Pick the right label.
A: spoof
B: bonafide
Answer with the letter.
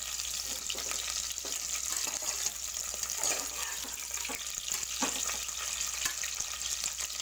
B